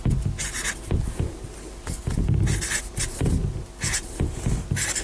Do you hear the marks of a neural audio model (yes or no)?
no